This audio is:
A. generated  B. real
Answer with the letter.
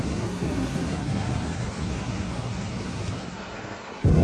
A